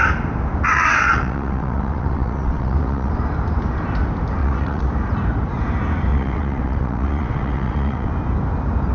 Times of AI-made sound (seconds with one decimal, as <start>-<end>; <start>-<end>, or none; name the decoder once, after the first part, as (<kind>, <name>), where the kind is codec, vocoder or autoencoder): 0.7-3.1 (vocoder, WaveNeXt); 4.4-4.9; 6.1-8.1